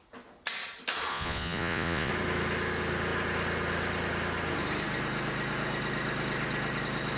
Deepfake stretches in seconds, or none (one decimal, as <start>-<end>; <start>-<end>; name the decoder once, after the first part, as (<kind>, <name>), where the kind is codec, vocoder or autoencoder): 1.1-2.1 (vocoder, Vocos)